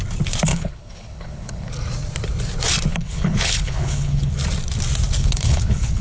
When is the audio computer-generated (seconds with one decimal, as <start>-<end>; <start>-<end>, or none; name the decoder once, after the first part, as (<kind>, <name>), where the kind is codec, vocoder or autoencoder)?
0.5-1.7 (codec, HILCodec); 2.9-4.3; 5.2-6.0